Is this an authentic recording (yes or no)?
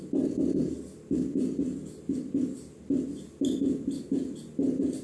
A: yes